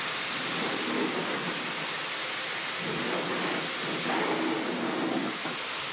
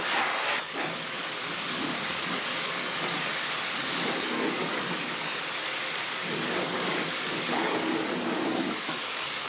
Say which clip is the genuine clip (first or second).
first